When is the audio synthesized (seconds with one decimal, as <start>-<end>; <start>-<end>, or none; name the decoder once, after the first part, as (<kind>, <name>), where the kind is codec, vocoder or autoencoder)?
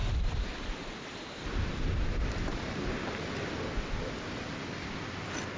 0.0-3.4 (vocoder, BigVGAN v2)